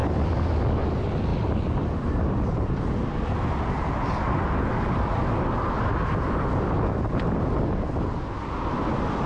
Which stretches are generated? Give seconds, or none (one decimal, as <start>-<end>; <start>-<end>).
0.0-0.6; 1.3-2.8